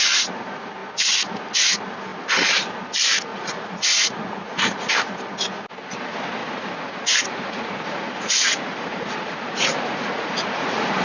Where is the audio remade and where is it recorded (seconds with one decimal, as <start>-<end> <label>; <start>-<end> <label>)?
0.0-3.3 recorded; 3.3-4.9 remade; 4.9-6.4 recorded; 6.4-11.0 remade